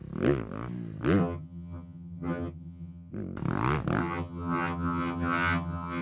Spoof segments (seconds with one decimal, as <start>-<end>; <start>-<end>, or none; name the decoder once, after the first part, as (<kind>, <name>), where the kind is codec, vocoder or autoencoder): 1.2-3.1 (vocoder, HiFi-GAN); 4.0-6.0